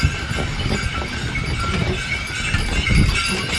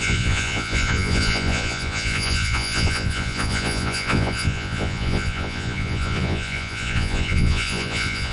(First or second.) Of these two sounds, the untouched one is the first